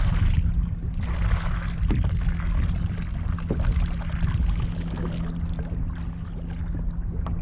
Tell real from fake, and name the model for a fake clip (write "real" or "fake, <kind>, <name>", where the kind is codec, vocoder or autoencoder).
real